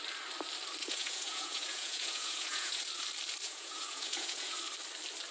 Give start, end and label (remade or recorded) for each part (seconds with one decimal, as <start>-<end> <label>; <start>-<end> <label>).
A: 0.0-0.8 recorded; 0.8-2.9 remade; 2.9-3.4 recorded; 3.4-4.6 remade; 4.6-5.3 recorded